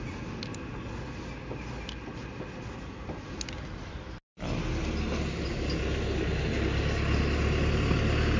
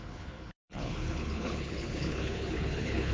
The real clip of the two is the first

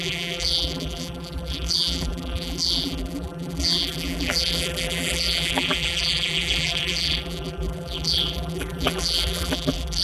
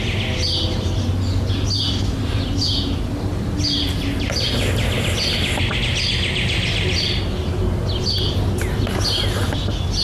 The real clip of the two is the second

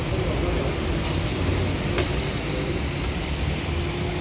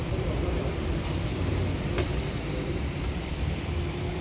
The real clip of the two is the first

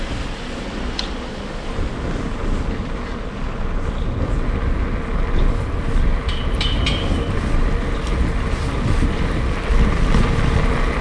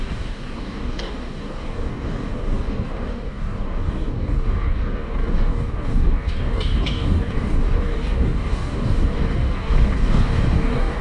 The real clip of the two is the first